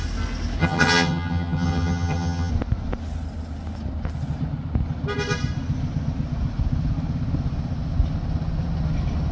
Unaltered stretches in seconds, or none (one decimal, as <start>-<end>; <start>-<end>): 0.0-0.6; 2.5-9.3